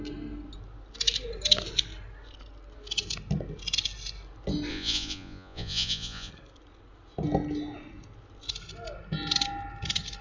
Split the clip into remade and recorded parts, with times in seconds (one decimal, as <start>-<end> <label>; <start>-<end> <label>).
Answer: 0.0-4.7 recorded; 4.7-6.3 remade; 6.3-10.2 recorded